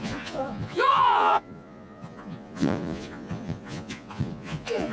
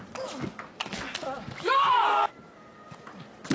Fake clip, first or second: first